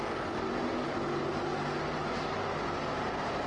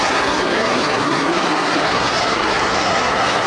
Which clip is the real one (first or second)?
first